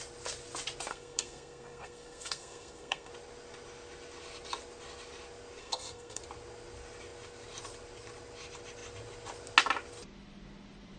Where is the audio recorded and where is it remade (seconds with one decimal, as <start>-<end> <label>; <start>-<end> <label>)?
0.0-0.9 recorded; 0.9-3.1 remade; 3.1-5.6 recorded; 5.6-6.2 remade; 6.2-11.0 recorded